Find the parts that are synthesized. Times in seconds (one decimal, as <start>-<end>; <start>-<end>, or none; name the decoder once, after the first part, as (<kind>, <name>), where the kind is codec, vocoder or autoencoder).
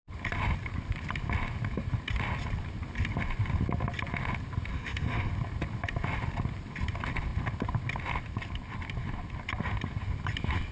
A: 4.7-5.3 (autoencoder, DAC-VAE)